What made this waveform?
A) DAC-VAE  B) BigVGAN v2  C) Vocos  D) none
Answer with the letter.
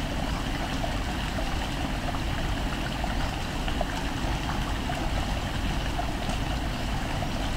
D